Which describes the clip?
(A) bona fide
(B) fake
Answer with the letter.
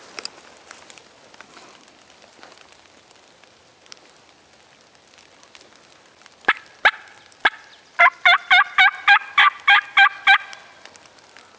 A